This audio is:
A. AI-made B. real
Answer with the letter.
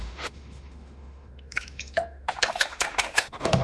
A